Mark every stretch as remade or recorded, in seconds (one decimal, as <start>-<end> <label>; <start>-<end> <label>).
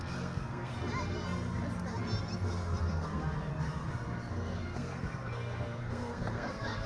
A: 0.0-0.8 remade; 0.8-2.9 recorded; 2.9-3.5 remade; 3.5-4.3 recorded; 4.3-6.9 remade